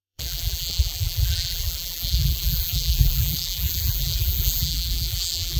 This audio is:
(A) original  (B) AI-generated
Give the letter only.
B